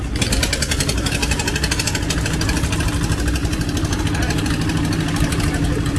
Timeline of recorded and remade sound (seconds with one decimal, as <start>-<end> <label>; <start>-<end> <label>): 0.0-6.0 recorded